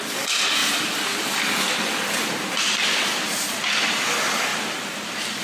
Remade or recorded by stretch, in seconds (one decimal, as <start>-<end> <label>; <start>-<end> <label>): 0.0-4.5 recorded; 4.5-5.4 remade